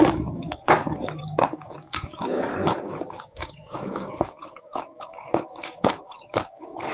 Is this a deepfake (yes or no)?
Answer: yes